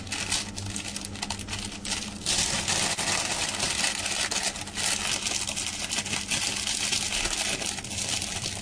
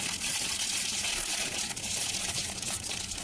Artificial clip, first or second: second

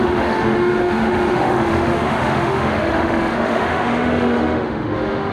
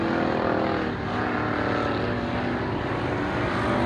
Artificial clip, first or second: first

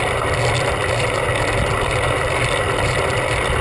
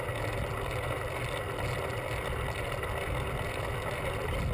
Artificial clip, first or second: first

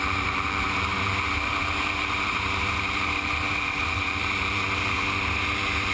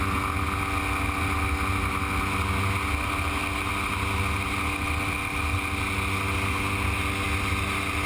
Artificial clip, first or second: first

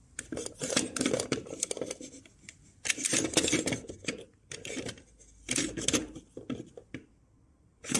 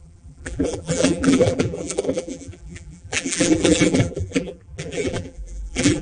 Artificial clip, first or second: second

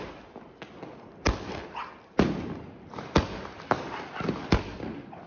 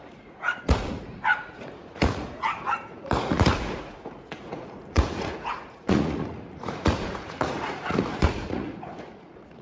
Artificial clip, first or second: second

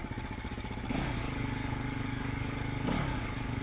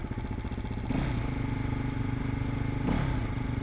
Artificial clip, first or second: first